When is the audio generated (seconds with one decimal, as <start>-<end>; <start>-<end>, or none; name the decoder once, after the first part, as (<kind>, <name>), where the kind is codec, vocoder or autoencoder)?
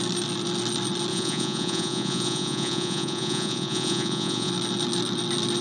1.1-4.5 (vocoder, Vocos)